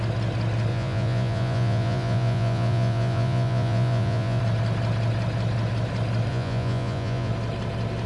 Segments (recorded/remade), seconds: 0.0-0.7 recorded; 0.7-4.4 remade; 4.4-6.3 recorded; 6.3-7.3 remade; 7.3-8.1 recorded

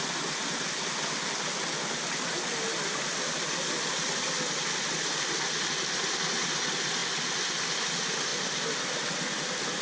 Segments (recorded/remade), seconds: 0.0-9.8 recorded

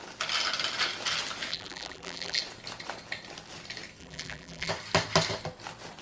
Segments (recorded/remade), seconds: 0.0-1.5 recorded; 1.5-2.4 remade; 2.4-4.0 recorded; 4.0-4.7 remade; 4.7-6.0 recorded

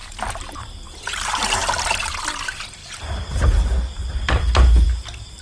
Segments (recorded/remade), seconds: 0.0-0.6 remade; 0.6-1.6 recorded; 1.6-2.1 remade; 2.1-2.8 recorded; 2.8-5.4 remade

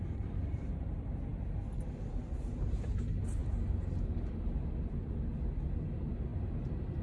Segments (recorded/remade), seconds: 0.0-6.3 recorded; 6.3-7.0 remade

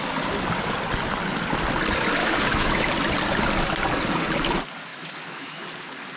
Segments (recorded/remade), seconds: 0.0-2.2 recorded; 2.2-2.9 remade; 2.9-4.9 recorded; 4.9-5.6 remade; 5.6-6.2 recorded